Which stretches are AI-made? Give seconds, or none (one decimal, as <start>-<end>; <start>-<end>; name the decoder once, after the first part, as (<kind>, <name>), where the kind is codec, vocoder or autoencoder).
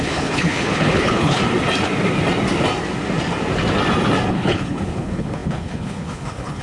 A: 0.0-1.4 (codec, HILCodec); 4.3-6.6